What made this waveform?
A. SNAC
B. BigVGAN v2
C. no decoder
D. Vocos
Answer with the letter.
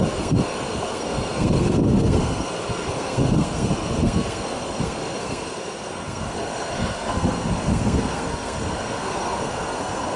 A